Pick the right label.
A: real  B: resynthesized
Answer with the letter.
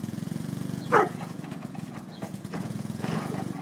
B